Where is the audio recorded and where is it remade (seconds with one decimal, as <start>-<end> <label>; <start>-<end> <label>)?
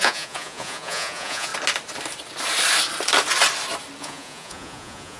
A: 0.0-1.5 remade; 1.5-4.0 recorded; 4.0-5.2 remade